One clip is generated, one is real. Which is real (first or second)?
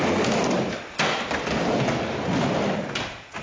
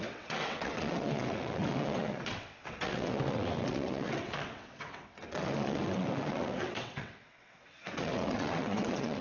first